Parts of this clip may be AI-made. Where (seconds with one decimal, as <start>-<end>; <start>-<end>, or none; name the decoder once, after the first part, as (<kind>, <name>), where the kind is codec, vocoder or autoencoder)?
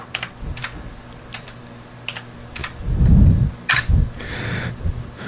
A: none